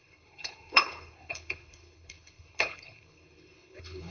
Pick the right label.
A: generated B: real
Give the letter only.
A